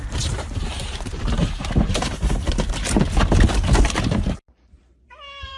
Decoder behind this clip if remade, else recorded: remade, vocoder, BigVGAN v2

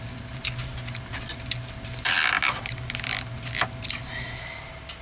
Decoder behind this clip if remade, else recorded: recorded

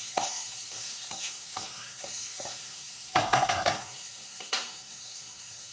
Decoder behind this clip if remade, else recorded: remade, codec, SNAC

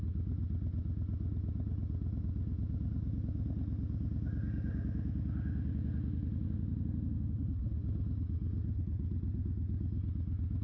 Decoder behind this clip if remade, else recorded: recorded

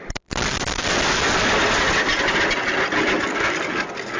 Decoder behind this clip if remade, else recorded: recorded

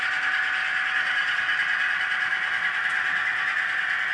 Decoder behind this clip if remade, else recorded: recorded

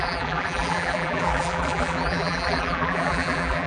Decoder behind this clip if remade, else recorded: remade, vocoder, BigVGAN v2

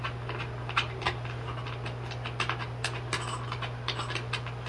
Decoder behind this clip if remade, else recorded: recorded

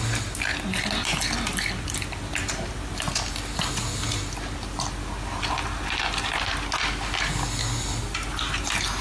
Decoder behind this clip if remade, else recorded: recorded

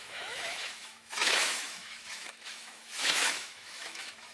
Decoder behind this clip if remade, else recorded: remade, autoencoder, DAC-VAE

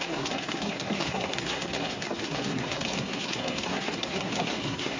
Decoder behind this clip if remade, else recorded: remade, codec, SNAC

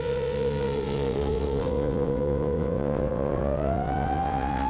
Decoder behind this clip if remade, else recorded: remade, vocoder, WaveNeXt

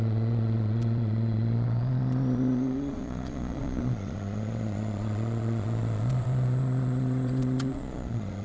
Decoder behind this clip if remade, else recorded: remade, vocoder, Vocos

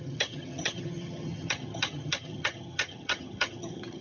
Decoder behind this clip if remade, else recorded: remade, vocoder, HiFi-GAN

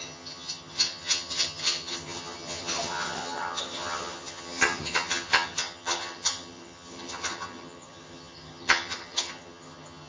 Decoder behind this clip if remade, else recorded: remade, vocoder, HiFi-GAN